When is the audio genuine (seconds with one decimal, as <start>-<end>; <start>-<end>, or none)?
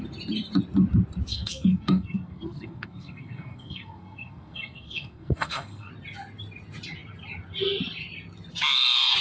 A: 0.0-1.3; 5.9-9.2